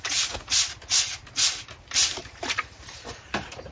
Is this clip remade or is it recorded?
recorded